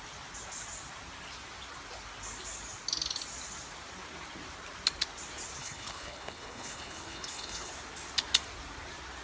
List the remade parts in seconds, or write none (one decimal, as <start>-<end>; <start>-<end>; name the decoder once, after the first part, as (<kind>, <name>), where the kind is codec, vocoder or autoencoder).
5.6-7.7 (codec, HILCodec)